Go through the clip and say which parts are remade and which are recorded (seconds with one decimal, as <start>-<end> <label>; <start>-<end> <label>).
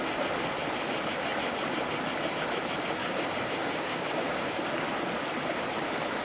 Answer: 0.0-3.0 recorded; 3.0-4.6 remade; 4.6-6.2 recorded